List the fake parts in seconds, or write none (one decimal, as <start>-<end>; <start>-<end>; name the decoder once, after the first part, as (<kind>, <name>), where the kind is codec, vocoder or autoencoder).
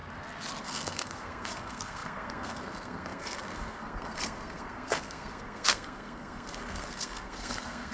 0.6-7.9 (codec, SNAC)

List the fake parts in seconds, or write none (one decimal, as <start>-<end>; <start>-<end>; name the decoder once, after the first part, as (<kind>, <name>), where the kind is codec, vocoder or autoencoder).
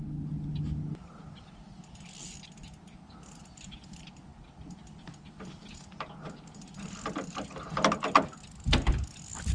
none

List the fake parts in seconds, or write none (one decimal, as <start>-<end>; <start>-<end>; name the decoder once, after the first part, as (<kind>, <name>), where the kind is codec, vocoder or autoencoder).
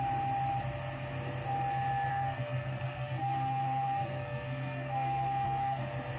2.1-5.8 (codec, SNAC)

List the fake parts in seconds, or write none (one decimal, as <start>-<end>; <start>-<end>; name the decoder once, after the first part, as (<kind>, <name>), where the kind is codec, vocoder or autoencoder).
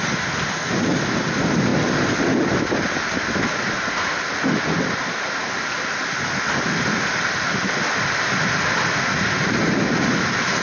none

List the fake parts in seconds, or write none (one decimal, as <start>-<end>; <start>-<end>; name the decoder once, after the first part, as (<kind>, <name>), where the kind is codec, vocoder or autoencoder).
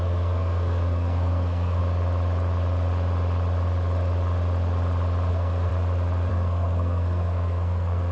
0.0-1.8 (codec, SNAC); 5.3-5.7; 6.3-8.1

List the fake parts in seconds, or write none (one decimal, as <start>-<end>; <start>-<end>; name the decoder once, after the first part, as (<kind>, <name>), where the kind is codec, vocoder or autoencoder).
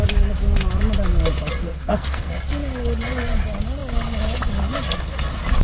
1.6-2.3 (codec, SNAC)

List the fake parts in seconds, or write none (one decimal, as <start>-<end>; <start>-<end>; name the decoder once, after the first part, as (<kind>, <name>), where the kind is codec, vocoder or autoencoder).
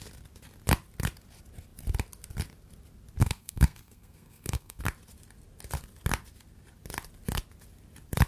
3.2-4.8 (codec, SNAC)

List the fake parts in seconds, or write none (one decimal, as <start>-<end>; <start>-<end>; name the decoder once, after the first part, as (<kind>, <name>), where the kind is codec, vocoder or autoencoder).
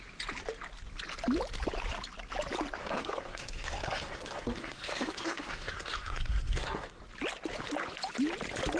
2.8-7.0 (codec, SNAC)